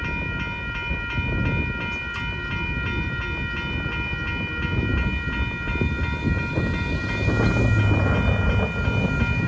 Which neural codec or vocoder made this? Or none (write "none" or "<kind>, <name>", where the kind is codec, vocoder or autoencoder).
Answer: none